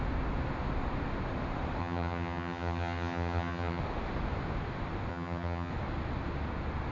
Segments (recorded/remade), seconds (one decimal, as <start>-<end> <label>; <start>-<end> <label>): 0.0-1.8 recorded; 1.8-3.8 remade; 3.8-5.1 recorded; 5.1-5.7 remade; 5.7-6.9 recorded